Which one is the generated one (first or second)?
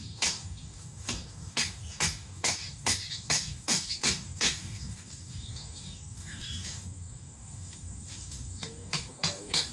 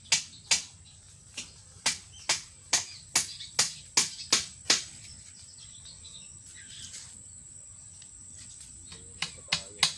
first